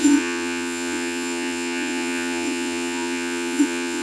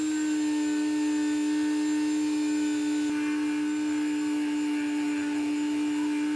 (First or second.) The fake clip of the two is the first